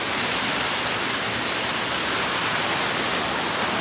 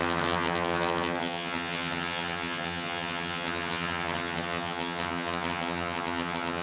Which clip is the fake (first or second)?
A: second